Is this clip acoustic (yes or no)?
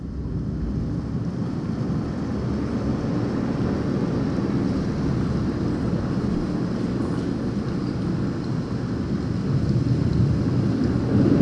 yes